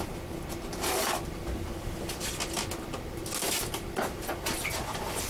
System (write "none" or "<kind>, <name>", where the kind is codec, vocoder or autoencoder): none